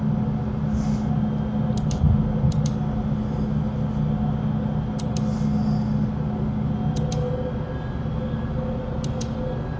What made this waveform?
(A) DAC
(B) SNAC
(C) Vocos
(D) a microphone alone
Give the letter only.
D